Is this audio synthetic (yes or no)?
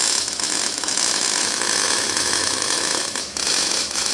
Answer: yes